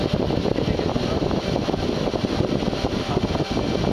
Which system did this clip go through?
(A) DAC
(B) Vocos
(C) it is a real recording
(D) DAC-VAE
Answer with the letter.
C